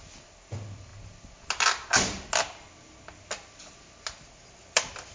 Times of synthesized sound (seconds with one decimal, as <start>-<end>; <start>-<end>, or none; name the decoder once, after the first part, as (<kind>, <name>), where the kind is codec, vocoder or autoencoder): none